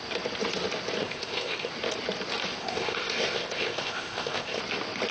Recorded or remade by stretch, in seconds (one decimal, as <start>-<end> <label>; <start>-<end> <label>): 0.0-1.0 recorded; 1.0-1.7 remade; 1.7-2.6 recorded; 2.6-4.6 remade; 4.6-5.1 recorded